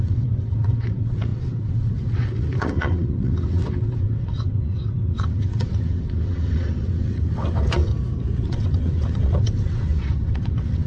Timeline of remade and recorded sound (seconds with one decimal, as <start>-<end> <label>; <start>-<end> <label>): 0.0-7.9 remade; 7.9-8.4 recorded; 8.4-10.9 remade